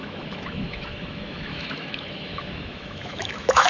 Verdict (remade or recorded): remade